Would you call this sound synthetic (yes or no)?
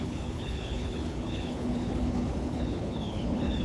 yes